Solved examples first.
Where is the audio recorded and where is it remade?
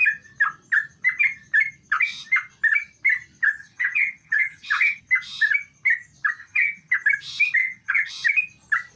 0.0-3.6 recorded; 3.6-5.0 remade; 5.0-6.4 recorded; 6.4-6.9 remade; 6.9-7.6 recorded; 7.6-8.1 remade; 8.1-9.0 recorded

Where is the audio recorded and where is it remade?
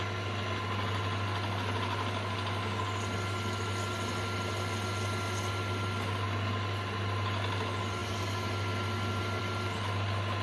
0.0-10.4 recorded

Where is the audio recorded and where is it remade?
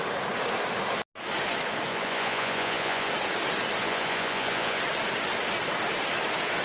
0.0-1.9 recorded; 1.9-3.1 remade; 3.1-3.8 recorded; 3.8-4.8 remade; 4.8-6.6 recorded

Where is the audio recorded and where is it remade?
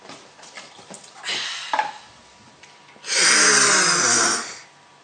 0.0-2.2 remade; 2.2-5.0 recorded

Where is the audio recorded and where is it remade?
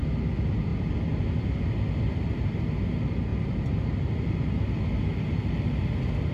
0.0-3.3 recorded; 3.3-4.1 remade; 4.1-6.3 recorded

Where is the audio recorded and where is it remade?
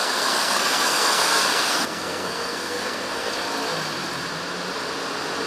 0.0-3.3 remade; 3.3-5.5 recorded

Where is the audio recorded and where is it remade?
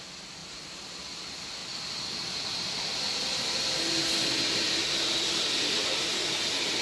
0.0-1.6 recorded; 1.6-5.7 remade; 5.7-6.8 recorded